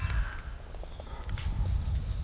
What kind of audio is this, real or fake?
real